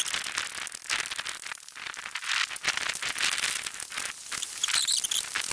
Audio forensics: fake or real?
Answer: real